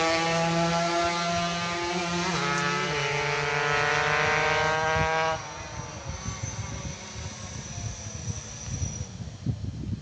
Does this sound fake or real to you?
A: real